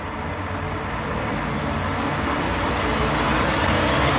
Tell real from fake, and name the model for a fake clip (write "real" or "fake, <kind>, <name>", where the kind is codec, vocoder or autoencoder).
real